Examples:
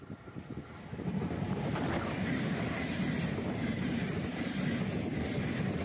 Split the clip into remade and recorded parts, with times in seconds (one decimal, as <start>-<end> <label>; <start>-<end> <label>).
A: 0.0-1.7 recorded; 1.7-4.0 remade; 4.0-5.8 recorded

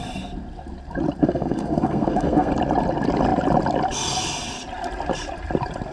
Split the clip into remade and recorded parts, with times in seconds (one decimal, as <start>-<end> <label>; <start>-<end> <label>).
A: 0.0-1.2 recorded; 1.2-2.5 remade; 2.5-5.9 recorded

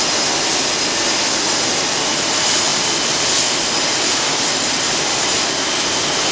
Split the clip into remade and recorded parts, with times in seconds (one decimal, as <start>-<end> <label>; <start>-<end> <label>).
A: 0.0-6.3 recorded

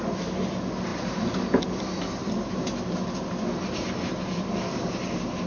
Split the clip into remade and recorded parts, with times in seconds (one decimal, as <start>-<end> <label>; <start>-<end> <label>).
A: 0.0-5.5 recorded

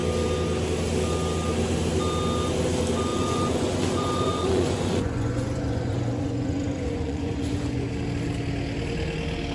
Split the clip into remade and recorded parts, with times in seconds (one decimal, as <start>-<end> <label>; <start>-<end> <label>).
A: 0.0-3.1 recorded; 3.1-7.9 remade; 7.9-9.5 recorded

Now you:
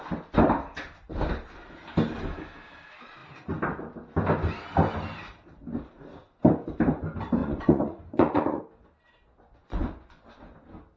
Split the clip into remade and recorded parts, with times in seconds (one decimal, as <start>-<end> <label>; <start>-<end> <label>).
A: 0.0-7.4 recorded; 7.4-8.6 remade; 8.6-9.6 recorded; 9.6-10.2 remade; 10.2-11.0 recorded

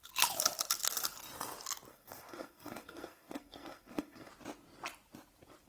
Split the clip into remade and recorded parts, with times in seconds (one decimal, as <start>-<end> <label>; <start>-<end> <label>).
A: 0.0-1.9 recorded; 1.9-4.3 remade; 4.3-5.7 recorded